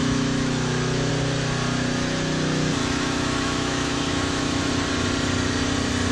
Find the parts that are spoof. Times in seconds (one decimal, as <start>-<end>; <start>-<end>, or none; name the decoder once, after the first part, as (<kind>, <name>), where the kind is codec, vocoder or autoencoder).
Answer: 0.0-1.1 (autoencoder, DAC-VAE); 2.8-4.7